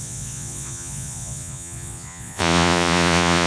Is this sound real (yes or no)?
no